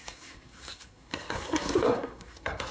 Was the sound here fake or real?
fake